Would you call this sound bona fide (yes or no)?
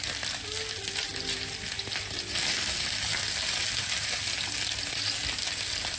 yes